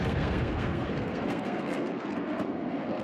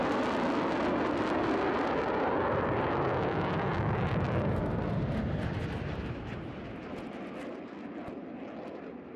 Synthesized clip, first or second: first